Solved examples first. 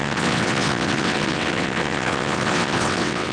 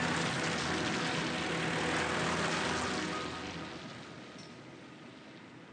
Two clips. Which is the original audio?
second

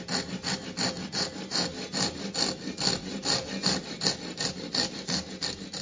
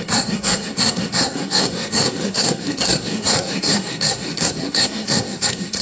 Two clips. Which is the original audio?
first